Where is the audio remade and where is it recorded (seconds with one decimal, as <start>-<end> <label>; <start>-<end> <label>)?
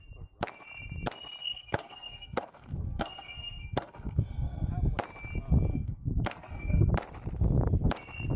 0.0-1.4 recorded; 1.4-4.7 remade; 4.7-5.7 recorded; 5.7-6.9 remade; 6.9-8.4 recorded